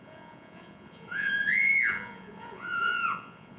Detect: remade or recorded remade